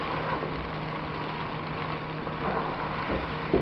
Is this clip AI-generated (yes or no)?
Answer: no